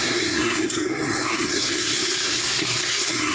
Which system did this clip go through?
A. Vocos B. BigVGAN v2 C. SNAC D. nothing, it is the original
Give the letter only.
C